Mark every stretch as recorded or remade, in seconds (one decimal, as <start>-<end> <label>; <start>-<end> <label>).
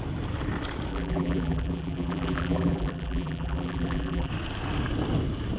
0.0-0.9 recorded; 0.9-4.3 remade; 4.3-5.6 recorded